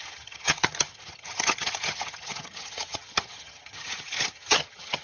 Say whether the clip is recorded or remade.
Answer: remade